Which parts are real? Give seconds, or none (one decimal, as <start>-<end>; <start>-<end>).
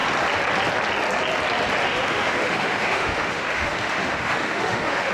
0.0-1.8